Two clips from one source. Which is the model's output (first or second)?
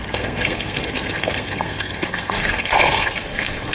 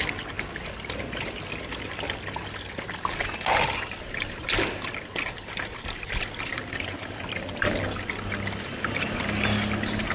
first